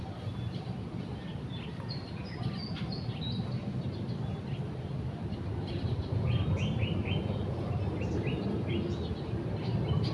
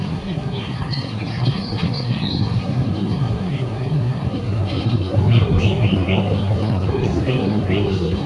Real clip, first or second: first